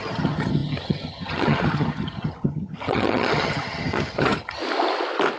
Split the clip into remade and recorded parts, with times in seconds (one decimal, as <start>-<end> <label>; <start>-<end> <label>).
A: 0.0-4.6 remade; 4.6-5.4 recorded